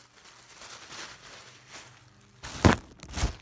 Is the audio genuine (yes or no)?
yes